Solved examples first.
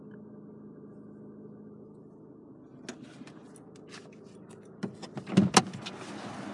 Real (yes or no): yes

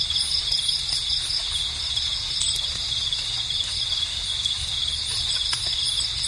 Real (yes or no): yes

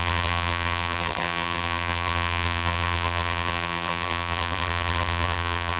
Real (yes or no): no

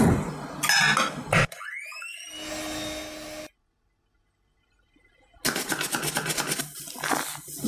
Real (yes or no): yes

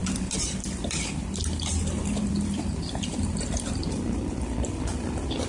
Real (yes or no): no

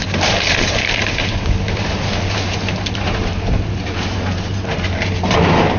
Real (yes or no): no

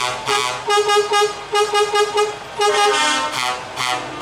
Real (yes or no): yes